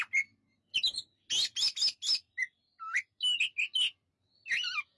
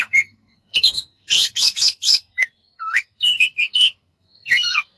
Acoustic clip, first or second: first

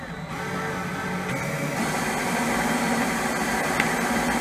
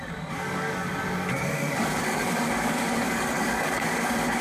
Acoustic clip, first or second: first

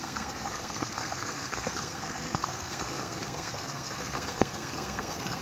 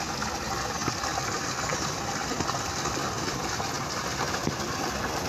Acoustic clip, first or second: second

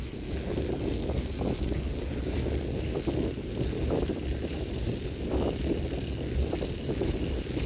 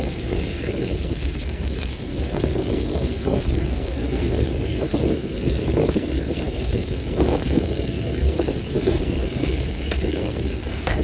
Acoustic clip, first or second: first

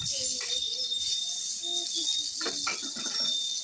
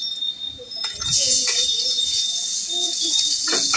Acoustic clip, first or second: first